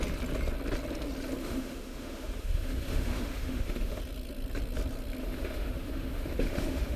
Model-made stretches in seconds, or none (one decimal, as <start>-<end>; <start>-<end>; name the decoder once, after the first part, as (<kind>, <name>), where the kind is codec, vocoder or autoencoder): 1.4-4.0 (autoencoder, DAC-VAE); 5.2-7.0

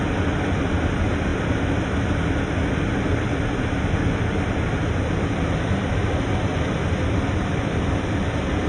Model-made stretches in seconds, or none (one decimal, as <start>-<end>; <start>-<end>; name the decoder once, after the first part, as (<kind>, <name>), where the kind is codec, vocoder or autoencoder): none

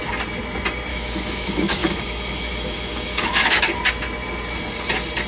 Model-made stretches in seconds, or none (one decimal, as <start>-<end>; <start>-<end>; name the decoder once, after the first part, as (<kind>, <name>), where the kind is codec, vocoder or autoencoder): 0.9-3.6 (autoencoder, DAC-VAE)